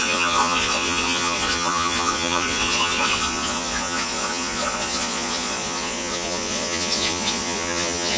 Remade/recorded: remade